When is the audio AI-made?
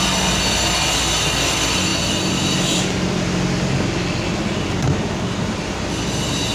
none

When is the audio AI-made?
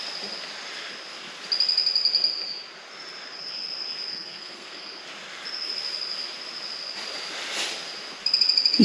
4.1-5.0 (codec, SNAC)